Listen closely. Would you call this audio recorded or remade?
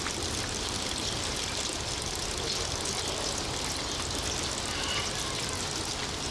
recorded